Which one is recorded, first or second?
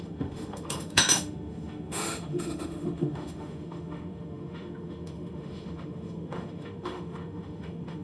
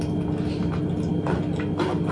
second